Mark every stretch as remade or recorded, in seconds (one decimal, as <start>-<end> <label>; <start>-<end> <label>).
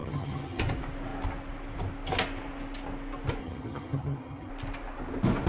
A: 0.0-0.6 remade; 0.6-3.4 recorded; 3.4-4.5 remade; 4.5-5.5 recorded